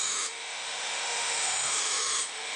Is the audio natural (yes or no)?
no